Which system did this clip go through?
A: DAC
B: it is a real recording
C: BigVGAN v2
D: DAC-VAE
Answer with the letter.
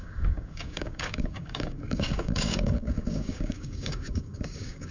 A